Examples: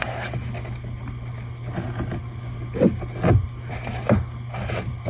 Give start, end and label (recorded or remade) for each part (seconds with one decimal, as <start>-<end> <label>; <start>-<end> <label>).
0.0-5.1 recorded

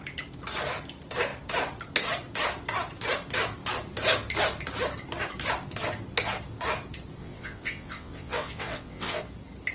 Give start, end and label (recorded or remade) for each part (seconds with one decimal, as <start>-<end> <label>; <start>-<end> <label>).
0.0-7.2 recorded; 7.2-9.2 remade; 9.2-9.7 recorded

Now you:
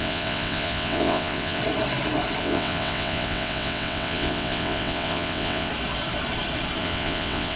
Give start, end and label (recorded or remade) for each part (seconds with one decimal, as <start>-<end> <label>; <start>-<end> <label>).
0.0-1.6 remade; 1.6-2.4 recorded; 2.4-5.7 remade; 5.7-6.8 recorded; 6.8-7.6 remade